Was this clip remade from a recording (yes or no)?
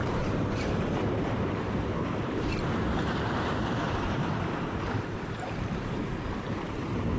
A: yes